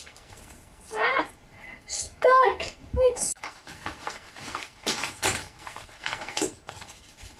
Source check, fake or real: fake